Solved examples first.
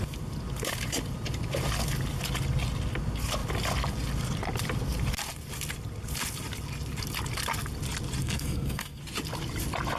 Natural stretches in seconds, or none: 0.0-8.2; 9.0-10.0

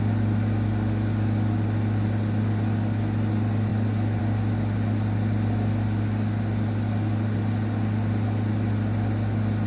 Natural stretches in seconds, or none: 0.0-9.7